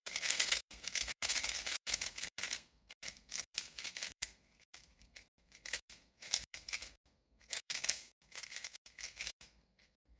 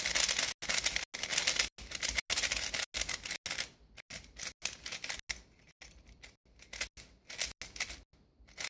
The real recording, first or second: second